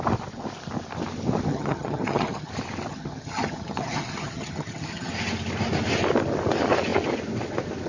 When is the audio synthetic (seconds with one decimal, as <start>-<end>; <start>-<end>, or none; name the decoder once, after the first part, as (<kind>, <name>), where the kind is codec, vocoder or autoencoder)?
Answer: 1.5-2.5 (vocoder, HiFi-GAN); 2.9-5.1